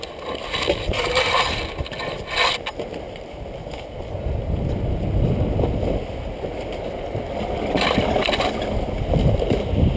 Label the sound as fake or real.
real